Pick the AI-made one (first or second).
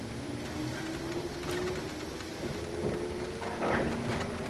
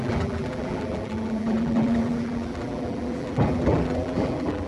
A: second